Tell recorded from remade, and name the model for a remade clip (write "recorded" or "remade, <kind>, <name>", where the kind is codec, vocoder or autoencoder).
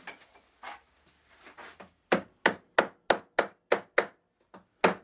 recorded